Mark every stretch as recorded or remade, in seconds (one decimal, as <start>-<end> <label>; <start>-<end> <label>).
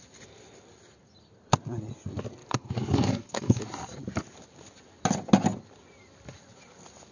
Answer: 0.0-2.4 recorded; 2.4-3.6 remade; 3.6-7.1 recorded